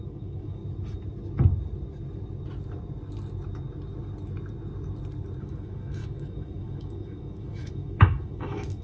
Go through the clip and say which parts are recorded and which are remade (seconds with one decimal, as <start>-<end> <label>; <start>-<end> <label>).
0.0-0.6 remade; 0.6-5.4 recorded; 5.4-8.8 remade